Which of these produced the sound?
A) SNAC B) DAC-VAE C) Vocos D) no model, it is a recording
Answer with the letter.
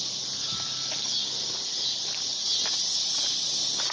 D